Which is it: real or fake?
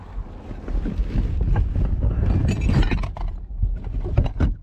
real